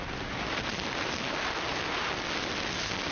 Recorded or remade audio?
recorded